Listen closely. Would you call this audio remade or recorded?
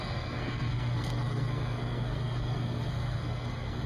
remade